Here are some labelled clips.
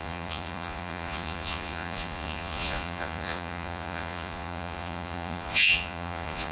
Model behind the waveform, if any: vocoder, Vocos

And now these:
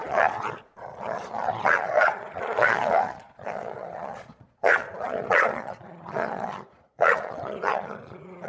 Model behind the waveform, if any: vocoder, Vocos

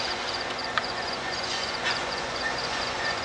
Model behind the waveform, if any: vocoder, Vocos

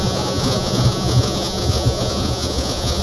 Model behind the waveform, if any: vocoder, Vocos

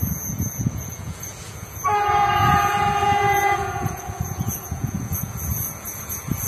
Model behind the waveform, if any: vocoder, Vocos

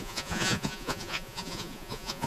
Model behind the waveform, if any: vocoder, Vocos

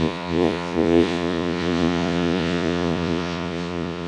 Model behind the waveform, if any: vocoder, Vocos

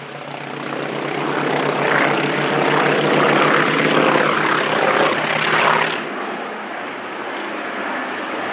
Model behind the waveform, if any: none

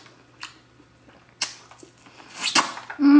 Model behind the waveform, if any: none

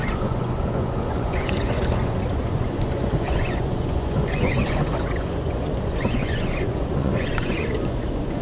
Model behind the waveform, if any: vocoder, Vocos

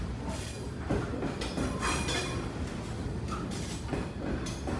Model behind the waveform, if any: none